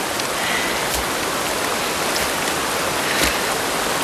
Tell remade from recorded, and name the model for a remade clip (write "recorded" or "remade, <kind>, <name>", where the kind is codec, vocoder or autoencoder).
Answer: recorded